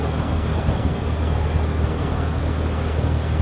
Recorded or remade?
remade